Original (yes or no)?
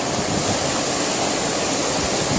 yes